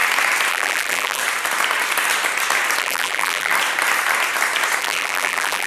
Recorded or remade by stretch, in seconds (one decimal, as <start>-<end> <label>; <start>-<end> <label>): 0.0-0.5 recorded; 0.5-1.2 remade; 1.2-2.8 recorded; 2.8-3.5 remade; 3.5-4.8 recorded; 4.8-5.7 remade